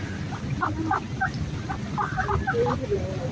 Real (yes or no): yes